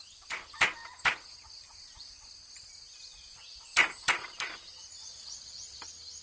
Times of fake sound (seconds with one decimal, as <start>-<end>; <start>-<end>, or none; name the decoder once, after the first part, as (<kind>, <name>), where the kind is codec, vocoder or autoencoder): 5.1-5.8 (vocoder, Vocos)